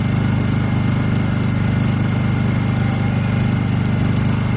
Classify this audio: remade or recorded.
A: recorded